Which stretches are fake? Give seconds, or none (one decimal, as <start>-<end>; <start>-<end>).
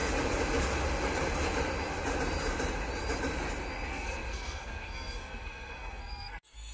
3.9-6.7